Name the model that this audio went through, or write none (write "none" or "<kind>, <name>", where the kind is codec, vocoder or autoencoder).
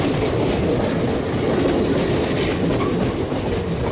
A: none